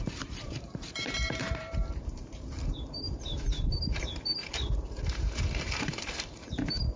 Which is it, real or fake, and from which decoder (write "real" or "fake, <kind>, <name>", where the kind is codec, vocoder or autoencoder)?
fake, vocoder, BigVGAN v2